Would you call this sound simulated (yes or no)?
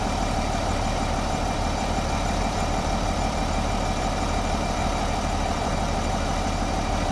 yes